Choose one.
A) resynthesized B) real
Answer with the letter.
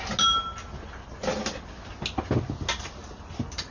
B